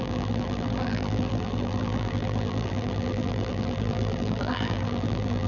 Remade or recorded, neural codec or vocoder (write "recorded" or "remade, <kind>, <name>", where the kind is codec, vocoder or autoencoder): remade, vocoder, BigVGAN v2